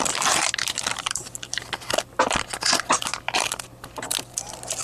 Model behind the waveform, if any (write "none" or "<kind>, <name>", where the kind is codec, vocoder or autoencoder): none